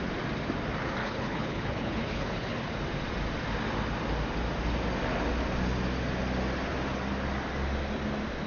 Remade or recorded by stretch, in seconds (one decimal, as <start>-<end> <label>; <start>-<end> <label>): 0.0-1.0 recorded; 1.0-2.7 remade; 2.7-8.5 recorded